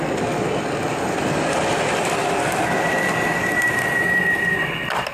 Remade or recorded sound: recorded